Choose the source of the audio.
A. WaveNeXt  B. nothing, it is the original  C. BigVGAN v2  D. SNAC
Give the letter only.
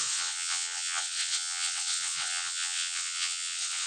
A